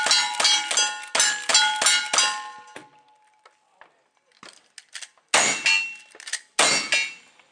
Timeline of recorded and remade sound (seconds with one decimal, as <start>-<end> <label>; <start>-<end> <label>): 0.0-7.5 recorded